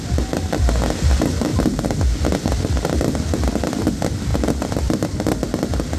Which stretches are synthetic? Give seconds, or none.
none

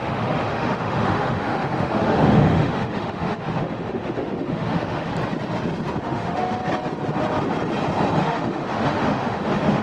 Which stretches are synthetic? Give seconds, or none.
0.0-5.1 (autoencoder, DAC-VAE); 6.0-6.6; 8.2-9.8

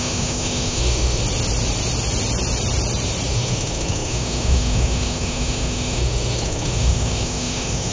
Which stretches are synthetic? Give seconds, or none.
0.0-1.2 (autoencoder, DAC-VAE); 3.3-7.9